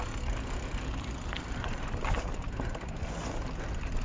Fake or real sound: real